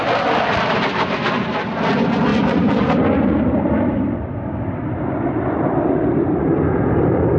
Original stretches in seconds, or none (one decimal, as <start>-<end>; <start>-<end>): 0.0-2.3; 6.7-7.4